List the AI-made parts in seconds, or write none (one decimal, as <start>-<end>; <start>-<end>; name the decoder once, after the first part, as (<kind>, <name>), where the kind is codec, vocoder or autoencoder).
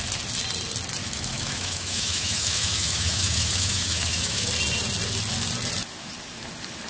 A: 1.0-4.5 (autoencoder, DAC-VAE)